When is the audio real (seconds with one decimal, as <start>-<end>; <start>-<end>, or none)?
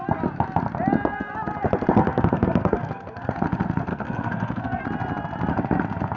0.0-2.0; 3.3-3.9; 4.8-6.2